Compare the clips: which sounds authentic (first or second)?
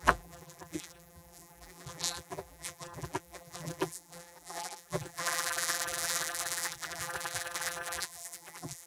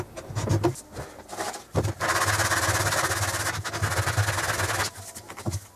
second